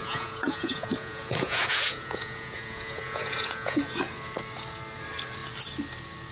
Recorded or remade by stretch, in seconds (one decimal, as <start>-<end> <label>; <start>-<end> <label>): 0.0-3.8 remade; 3.8-6.3 recorded